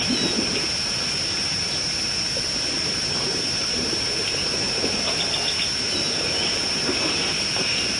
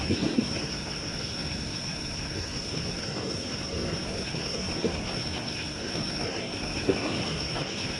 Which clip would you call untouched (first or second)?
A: first